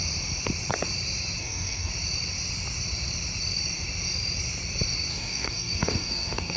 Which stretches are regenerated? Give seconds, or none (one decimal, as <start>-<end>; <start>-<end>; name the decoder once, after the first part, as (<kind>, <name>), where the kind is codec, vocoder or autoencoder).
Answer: 1.4-1.9 (codec, DAC); 5.1-6.6